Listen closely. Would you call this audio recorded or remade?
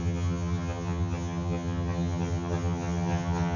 remade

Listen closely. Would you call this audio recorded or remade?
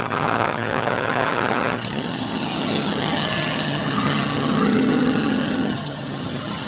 remade